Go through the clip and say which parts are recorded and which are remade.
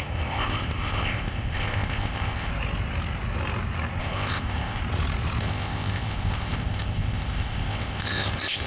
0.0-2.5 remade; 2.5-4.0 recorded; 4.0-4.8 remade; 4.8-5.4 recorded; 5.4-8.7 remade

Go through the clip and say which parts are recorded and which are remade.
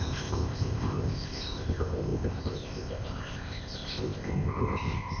0.0-5.2 remade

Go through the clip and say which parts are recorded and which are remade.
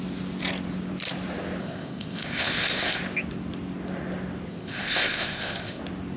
0.0-1.6 recorded; 1.6-3.0 remade; 3.0-4.5 recorded; 4.5-5.8 remade; 5.8-6.2 recorded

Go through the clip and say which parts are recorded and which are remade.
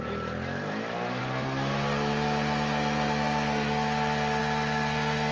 0.0-5.3 recorded